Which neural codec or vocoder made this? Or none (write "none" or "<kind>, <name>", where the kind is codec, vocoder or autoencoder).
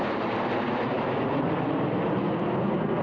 none